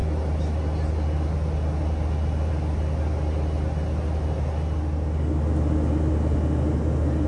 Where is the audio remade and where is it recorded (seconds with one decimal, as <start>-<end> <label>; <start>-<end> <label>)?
0.0-7.3 recorded